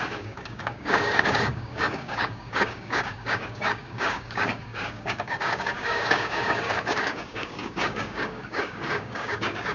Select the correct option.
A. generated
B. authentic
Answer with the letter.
A